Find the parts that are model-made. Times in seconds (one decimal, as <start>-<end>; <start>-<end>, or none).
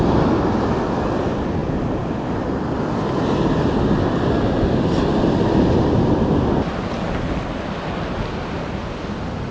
none